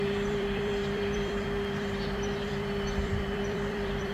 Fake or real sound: fake